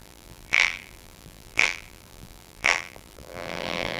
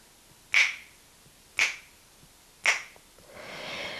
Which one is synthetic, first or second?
first